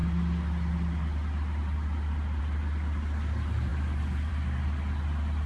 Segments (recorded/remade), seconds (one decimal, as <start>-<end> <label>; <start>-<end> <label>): 0.0-5.5 recorded